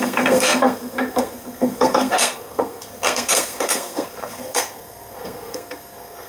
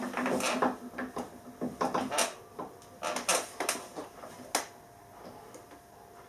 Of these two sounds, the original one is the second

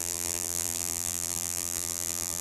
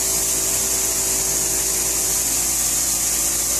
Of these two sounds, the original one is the second